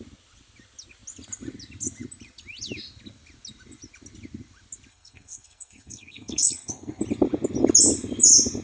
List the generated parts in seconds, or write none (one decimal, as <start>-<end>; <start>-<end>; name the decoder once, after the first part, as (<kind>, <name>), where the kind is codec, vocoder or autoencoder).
4.9-7.0 (codec, SNAC)